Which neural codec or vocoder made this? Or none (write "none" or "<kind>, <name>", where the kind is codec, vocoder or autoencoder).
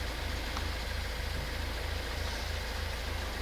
none